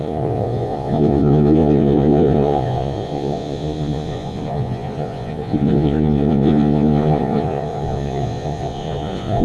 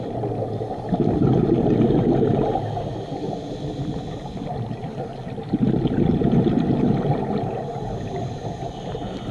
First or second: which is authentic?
second